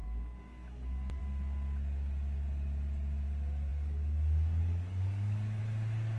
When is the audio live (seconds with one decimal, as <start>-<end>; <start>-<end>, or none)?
1.2-3.7; 5.6-6.2